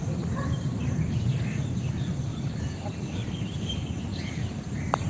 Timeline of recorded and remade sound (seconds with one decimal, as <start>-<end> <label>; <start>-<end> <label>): 0.0-1.6 recorded; 1.6-5.1 remade